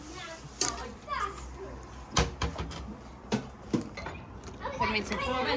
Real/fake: real